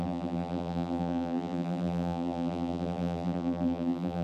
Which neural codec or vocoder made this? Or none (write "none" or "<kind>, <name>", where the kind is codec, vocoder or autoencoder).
vocoder, BigVGAN v2